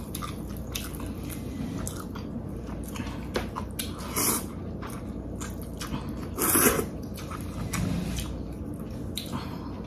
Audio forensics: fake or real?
real